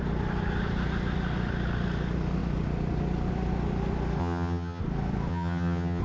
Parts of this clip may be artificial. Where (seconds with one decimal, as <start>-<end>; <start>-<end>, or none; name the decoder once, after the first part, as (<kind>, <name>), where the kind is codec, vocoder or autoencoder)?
4.2-4.8 (vocoder, HiFi-GAN); 5.3-6.0